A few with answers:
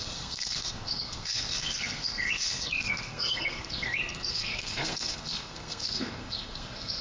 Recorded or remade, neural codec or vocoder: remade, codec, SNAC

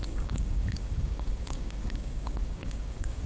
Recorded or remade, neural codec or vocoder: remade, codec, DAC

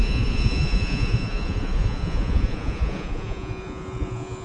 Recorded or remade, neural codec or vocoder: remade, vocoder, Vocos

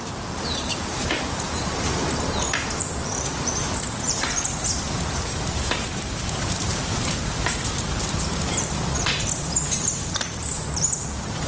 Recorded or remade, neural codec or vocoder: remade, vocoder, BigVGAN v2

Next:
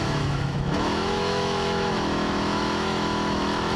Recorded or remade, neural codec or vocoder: remade, autoencoder, DAC-VAE